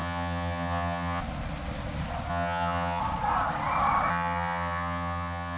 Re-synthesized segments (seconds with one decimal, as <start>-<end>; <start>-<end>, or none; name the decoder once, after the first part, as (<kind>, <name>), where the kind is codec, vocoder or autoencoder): 0.0-1.2 (vocoder, HiFi-GAN); 2.3-3.0; 4.1-5.6